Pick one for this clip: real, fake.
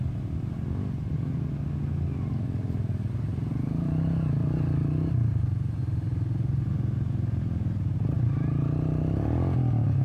real